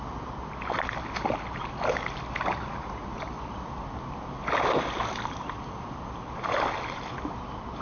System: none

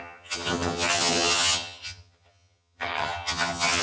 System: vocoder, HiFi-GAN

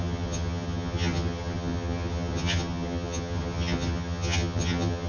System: vocoder, HiFi-GAN